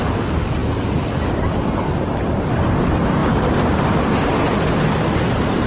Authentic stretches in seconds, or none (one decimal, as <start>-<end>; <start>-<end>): 0.0-0.6; 1.2-3.2; 4.6-5.7